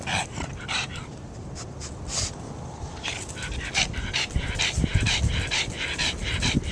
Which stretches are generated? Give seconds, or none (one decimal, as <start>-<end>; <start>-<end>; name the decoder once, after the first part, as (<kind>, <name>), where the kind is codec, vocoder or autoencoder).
none

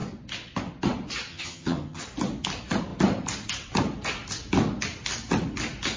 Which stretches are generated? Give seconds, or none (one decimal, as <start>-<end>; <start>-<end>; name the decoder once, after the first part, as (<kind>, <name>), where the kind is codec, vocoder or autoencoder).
1.3-2.0 (vocoder, HiFi-GAN)

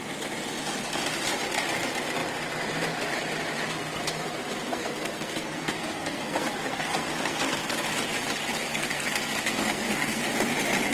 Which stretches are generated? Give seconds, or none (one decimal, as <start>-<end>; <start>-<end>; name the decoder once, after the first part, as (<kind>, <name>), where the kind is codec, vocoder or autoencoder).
4.7-7.7 (codec, SNAC); 8.7-10.2

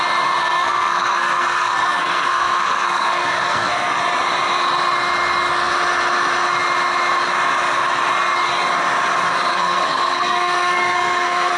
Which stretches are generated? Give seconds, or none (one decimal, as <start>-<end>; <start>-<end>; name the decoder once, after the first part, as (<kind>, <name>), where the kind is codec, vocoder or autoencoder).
0.4-4.0 (codec, SNAC); 9.5-11.6

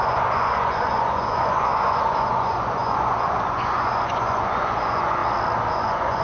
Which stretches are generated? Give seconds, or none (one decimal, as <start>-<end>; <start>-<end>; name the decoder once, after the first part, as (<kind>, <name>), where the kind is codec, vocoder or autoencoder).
0.0-5.2 (vocoder, Vocos); 5.7-6.2

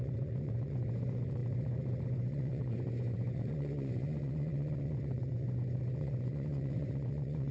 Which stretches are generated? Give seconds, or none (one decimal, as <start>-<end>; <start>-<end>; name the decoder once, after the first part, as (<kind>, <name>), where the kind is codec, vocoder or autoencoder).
0.0-7.5 (vocoder, Vocos)